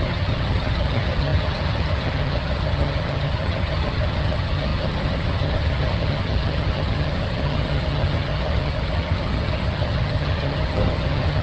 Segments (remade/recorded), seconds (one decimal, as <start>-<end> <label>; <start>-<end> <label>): 0.0-11.4 remade